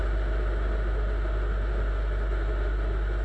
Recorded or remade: recorded